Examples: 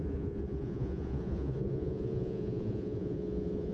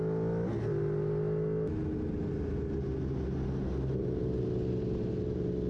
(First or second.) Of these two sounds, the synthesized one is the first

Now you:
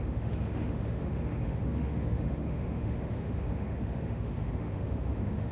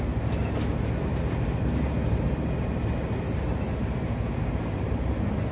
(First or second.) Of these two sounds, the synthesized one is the first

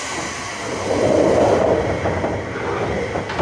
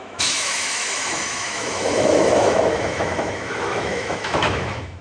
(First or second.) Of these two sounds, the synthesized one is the second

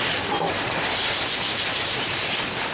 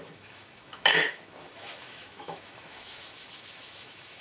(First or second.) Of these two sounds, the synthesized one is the second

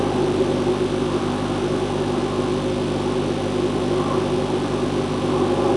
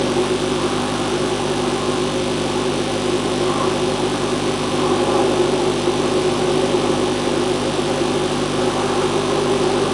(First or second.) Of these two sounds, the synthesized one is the first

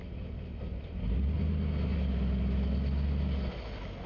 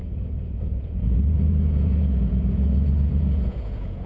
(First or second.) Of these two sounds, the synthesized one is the second